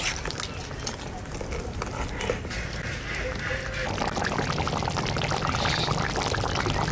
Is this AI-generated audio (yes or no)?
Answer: no